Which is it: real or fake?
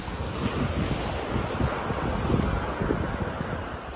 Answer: real